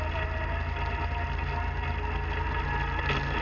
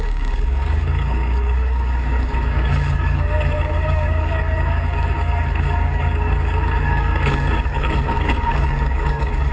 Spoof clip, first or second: second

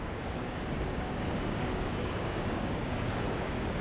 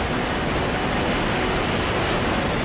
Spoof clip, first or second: first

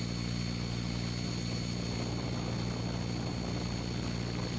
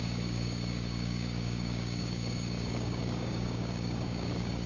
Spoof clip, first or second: second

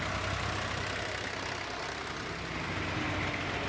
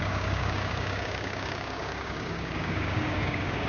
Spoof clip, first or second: second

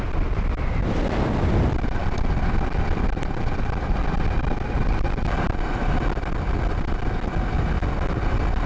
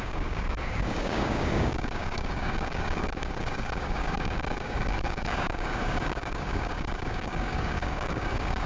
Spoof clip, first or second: second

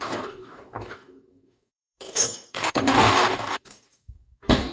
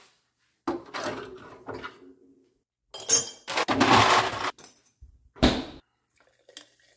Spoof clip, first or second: first